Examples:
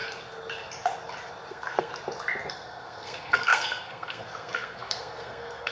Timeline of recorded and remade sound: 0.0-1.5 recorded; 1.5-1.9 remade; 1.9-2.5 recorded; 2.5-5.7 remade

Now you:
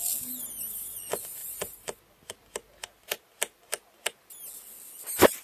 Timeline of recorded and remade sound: 0.0-5.4 recorded